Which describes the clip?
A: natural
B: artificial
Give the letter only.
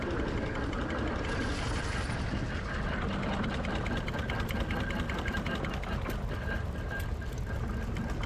A